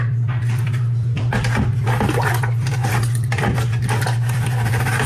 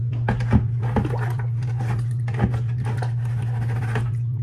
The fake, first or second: first